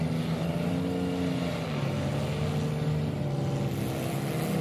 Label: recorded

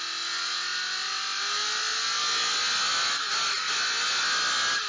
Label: recorded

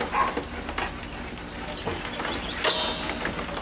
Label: recorded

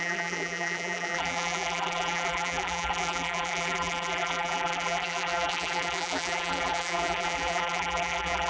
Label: remade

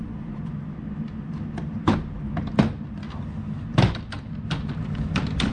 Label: recorded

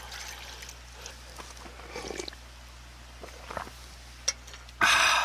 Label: recorded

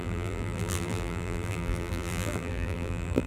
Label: remade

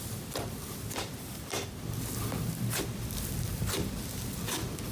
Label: remade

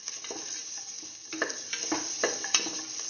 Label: remade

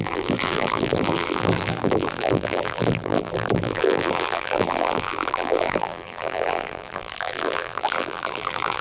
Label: remade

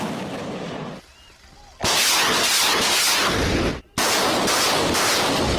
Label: recorded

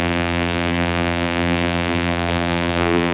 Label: remade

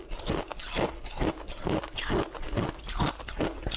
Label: recorded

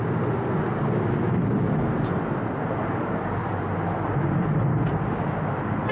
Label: recorded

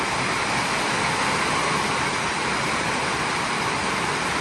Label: remade